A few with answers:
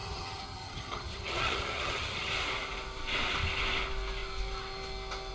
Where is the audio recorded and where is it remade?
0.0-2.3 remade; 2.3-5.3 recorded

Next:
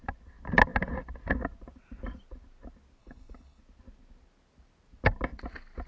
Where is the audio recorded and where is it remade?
0.0-3.0 recorded; 3.0-3.6 remade; 3.6-5.9 recorded

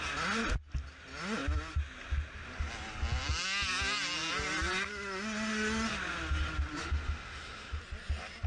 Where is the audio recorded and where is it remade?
0.0-6.8 recorded; 6.8-7.8 remade; 7.8-8.5 recorded